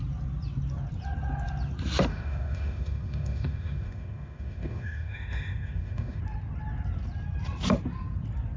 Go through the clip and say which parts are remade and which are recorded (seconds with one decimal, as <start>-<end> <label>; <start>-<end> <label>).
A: 0.0-2.1 recorded; 2.1-6.2 remade; 6.2-8.6 recorded